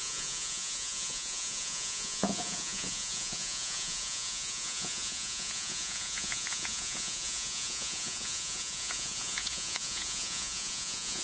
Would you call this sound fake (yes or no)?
yes